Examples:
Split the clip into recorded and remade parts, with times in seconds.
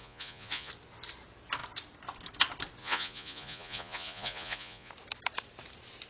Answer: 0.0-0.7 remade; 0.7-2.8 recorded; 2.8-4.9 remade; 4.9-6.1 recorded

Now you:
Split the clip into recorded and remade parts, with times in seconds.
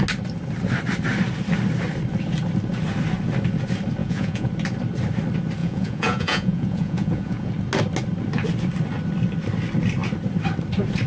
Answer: 0.0-4.0 recorded; 4.0-4.5 remade; 4.5-5.6 recorded; 5.6-7.5 remade; 7.5-11.1 recorded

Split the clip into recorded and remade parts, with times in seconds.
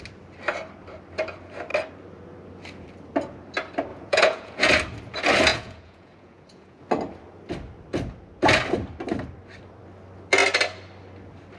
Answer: 0.0-3.9 recorded; 3.9-4.7 remade; 4.7-5.5 recorded; 5.5-6.8 remade; 6.8-11.6 recorded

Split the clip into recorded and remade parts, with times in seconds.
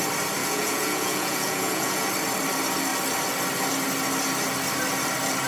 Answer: 0.0-0.4 recorded; 0.4-2.1 remade; 2.1-5.5 recorded